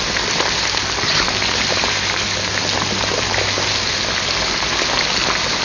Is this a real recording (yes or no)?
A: yes